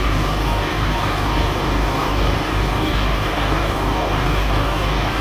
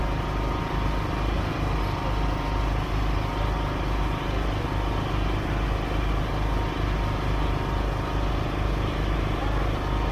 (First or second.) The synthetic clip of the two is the first